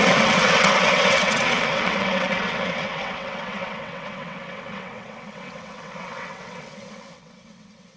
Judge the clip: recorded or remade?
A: remade